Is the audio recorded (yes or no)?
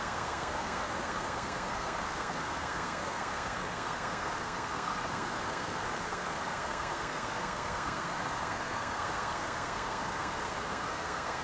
no